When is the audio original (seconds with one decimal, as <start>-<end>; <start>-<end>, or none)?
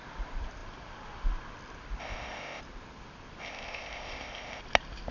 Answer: 0.0-2.0; 2.6-3.4; 4.6-5.1